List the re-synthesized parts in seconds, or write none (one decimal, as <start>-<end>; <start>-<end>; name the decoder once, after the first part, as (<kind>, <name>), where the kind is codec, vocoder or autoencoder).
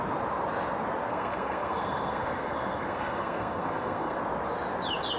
1.1-4.2 (codec, SNAC)